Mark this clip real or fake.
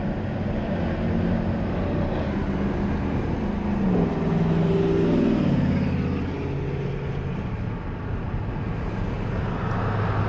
real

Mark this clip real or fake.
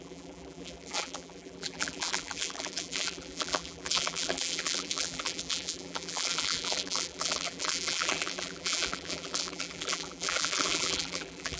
fake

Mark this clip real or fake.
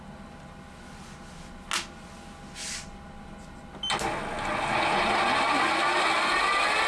real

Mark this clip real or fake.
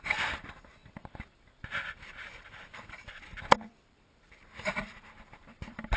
fake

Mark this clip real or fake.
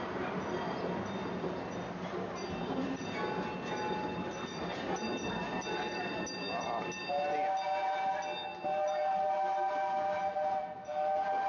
real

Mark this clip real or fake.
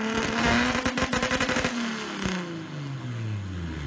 real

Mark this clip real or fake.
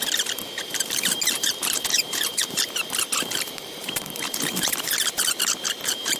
fake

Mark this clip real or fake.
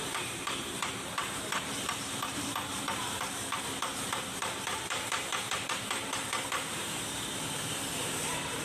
fake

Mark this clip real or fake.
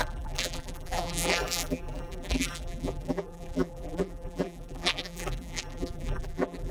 fake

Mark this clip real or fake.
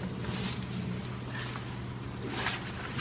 real